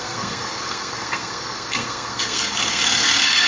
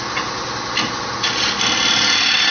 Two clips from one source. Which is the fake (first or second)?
first